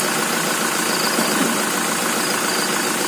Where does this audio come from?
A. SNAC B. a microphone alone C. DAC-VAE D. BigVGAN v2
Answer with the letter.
B